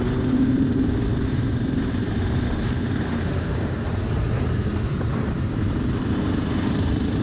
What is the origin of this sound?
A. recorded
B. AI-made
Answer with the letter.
B